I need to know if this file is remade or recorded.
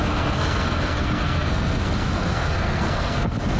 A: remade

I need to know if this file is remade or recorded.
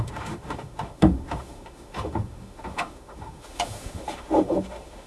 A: remade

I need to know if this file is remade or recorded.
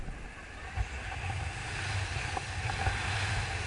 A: recorded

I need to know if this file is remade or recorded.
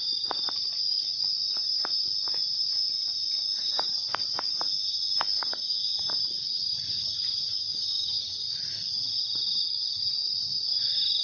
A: recorded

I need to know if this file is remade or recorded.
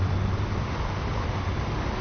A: recorded